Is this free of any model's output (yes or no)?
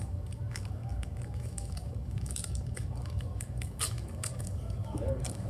no